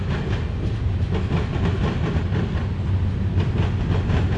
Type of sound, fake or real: real